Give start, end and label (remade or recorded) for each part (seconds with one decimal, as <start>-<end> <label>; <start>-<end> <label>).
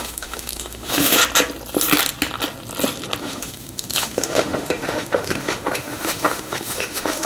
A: 0.0-1.2 remade; 1.2-3.2 recorded; 3.2-7.3 remade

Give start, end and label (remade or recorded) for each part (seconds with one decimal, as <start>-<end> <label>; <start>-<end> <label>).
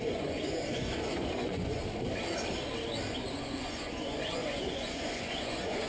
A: 0.0-1.8 remade; 1.8-3.1 recorded; 3.1-5.9 remade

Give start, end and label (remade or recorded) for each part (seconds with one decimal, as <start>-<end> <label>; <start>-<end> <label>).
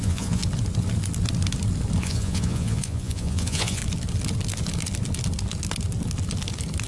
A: 0.0-0.4 remade; 0.4-2.0 recorded; 2.0-3.8 remade; 3.8-6.9 recorded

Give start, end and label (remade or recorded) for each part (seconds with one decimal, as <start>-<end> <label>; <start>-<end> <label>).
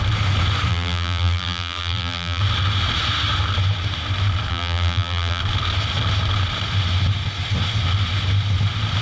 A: 0.0-0.7 recorded; 0.7-2.4 remade; 2.4-4.5 recorded; 4.5-5.4 remade; 5.4-9.0 recorded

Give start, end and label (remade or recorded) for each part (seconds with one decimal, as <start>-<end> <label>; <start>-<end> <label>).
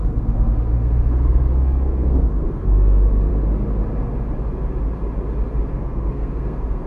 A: 0.0-3.3 remade; 3.3-5.7 recorded; 5.7-6.9 remade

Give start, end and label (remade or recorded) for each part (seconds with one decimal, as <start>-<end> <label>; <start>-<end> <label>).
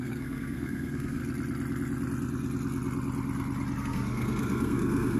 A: 0.0-1.2 remade; 1.2-3.8 recorded; 3.8-5.2 remade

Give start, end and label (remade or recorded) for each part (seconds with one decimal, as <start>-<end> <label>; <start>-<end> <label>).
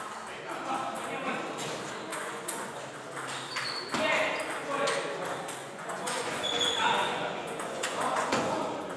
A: 0.0-2.1 recorded; 2.1-2.8 remade; 2.8-5.6 recorded; 5.6-8.6 remade; 8.6-9.0 recorded